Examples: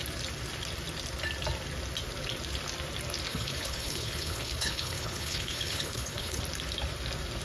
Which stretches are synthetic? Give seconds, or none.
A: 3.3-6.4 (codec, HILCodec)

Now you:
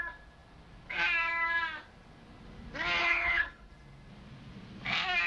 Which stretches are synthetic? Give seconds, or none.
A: 3.0-3.7 (codec, HILCodec)

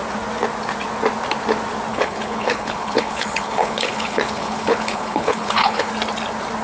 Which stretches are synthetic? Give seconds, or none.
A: 1.9-5.9 (codec, HILCodec)

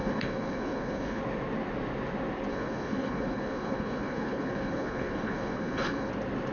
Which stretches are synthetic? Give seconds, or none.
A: 0.0-1.2 (codec, HILCodec); 2.5-6.1

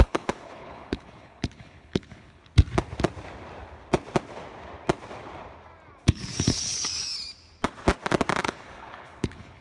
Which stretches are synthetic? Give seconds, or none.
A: 0.0-2.4 (codec, HILCodec); 6.1-6.9; 8.4-9.6